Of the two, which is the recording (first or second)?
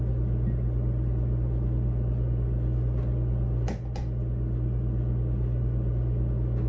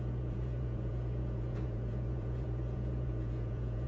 first